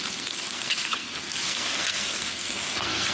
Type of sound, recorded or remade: remade